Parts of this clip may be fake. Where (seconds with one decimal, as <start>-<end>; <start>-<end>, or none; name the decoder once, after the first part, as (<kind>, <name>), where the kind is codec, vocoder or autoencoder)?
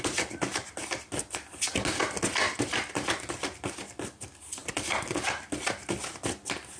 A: none